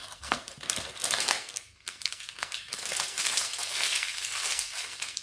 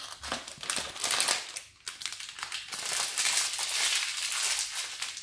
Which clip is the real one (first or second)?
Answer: second